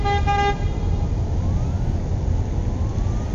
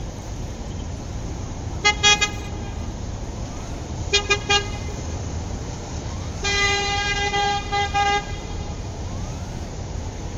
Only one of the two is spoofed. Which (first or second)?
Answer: second